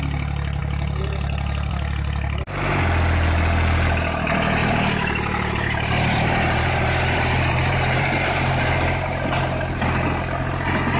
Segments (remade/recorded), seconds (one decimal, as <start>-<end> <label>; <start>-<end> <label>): 0.0-4.6 recorded; 4.6-9.0 remade; 9.0-11.0 recorded